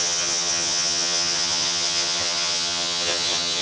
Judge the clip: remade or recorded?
remade